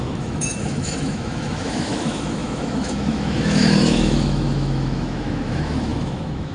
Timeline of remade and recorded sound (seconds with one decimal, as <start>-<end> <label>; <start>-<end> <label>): 0.0-6.5 remade